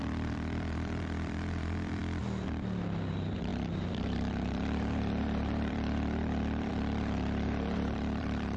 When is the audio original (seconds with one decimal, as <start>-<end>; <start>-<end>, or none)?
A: 2.0-3.1